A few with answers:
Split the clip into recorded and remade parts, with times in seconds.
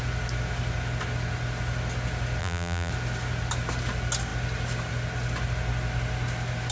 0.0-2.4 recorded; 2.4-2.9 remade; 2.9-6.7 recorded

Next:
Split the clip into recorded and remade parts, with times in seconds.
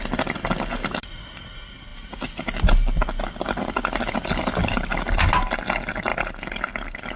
0.0-7.2 recorded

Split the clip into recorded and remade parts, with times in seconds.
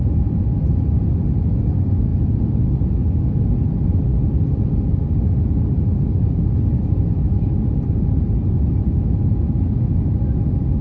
0.0-10.8 recorded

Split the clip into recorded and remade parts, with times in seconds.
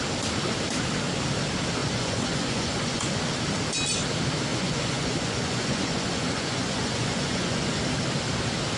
0.0-1.8 recorded; 1.8-3.2 remade; 3.2-4.5 recorded; 4.5-7.8 remade; 7.8-8.8 recorded